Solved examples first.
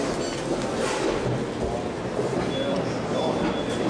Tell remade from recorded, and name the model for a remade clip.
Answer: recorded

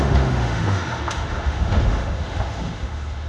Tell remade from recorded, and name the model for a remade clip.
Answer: remade, autoencoder, DAC-VAE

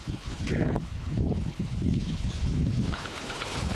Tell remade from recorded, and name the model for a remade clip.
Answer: remade, codec, HILCodec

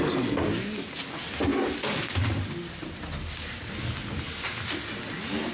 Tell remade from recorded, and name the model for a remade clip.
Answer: recorded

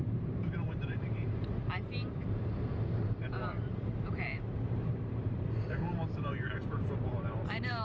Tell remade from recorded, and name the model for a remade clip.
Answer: remade, vocoder, BigVGAN v2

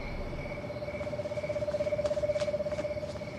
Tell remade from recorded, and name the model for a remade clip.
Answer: recorded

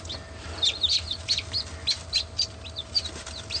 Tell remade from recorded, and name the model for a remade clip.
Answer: recorded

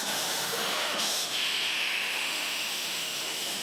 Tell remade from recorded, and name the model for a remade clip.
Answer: remade, autoencoder, DAC-VAE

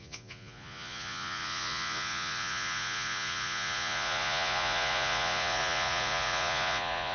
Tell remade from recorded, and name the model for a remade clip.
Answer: remade, vocoder, Vocos